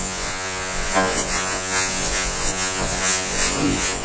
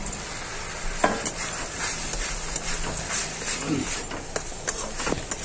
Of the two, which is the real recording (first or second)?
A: second